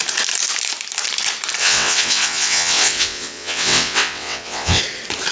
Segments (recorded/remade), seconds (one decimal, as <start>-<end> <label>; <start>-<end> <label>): 0.0-1.6 recorded; 1.6-4.8 remade; 4.8-5.3 recorded